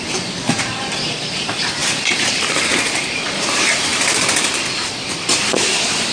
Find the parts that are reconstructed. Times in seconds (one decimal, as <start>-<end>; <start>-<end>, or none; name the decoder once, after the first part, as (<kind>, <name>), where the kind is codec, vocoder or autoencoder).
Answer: 0.0-6.1 (vocoder, BigVGAN v2)

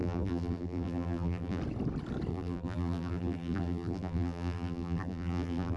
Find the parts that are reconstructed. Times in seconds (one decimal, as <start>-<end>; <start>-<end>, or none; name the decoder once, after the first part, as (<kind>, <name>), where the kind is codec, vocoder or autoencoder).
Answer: 0.0-1.6 (vocoder, BigVGAN v2); 2.3-5.8

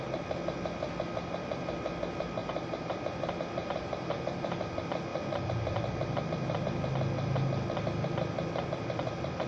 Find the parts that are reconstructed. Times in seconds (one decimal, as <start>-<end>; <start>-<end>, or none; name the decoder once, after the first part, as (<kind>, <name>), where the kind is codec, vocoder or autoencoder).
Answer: 2.4-3.0 (vocoder, BigVGAN v2); 3.6-4.6

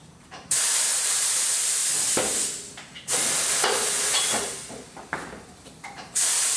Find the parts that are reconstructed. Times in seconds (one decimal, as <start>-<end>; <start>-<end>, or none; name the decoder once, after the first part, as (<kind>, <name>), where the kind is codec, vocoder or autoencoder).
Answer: 0.0-1.8 (vocoder, BigVGAN v2); 5.8-6.6

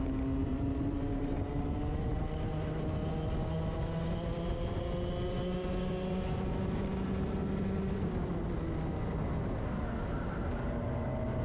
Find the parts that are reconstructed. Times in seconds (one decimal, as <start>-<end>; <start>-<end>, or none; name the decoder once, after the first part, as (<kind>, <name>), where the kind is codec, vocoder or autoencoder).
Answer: 0.4-1.8 (vocoder, BigVGAN v2)

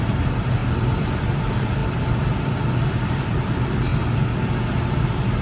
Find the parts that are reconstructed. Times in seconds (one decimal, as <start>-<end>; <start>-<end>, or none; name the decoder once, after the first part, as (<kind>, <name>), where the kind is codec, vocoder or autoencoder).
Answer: 0.0-3.9 (vocoder, BigVGAN v2); 5.0-5.4

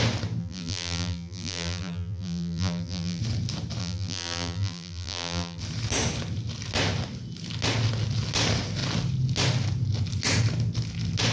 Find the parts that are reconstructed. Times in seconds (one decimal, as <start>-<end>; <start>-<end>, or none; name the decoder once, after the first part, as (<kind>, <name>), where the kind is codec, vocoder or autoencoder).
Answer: 0.4-3.2 (vocoder, BigVGAN v2); 3.8-5.6

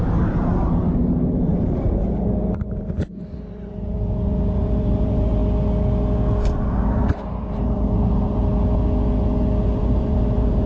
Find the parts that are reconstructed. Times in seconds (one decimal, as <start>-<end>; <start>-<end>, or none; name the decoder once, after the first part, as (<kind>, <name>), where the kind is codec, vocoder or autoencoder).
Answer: 1.5-5.4 (vocoder, BigVGAN v2); 6.6-8.5; 9.6-10.7